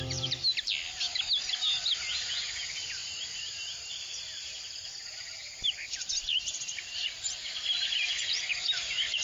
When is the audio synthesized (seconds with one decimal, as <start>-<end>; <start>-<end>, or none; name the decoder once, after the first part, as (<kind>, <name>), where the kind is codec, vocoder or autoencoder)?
0.0-0.4 (vocoder, BigVGAN v2); 2.4-7.0; 7.8-9.2